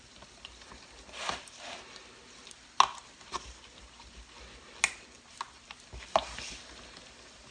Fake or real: real